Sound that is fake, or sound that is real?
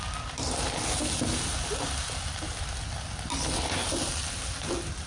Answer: real